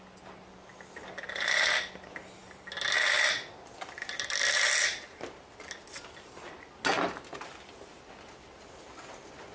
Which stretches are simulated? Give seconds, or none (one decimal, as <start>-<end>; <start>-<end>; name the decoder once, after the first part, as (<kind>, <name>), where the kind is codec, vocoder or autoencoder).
none